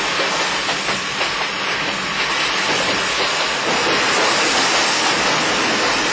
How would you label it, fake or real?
real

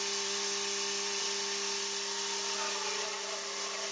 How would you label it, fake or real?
real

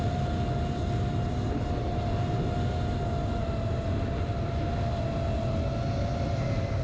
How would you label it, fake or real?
real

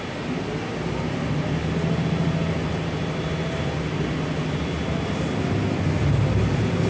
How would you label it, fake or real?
real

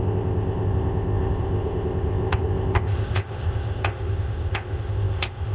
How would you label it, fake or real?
fake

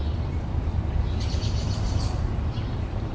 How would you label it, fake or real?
real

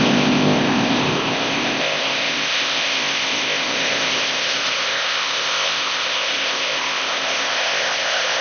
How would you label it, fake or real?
fake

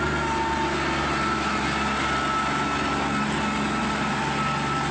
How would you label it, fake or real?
real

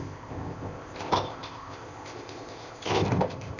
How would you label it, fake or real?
fake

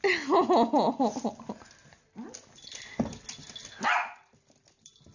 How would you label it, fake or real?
real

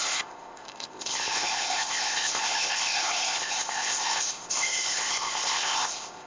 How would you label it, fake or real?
fake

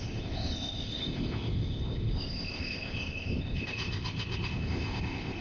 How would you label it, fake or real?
fake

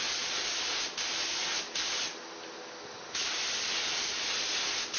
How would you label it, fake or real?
real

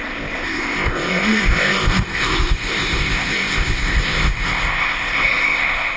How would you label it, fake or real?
fake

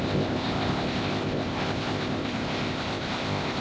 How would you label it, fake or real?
fake